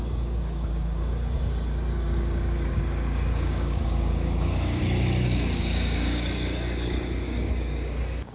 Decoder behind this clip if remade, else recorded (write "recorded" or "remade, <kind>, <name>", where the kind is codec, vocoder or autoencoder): remade, codec, DAC